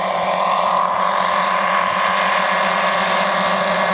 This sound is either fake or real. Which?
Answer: real